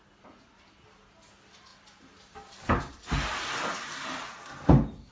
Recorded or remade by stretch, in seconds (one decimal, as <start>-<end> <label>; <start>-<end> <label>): 0.0-1.7 recorded; 1.7-5.1 remade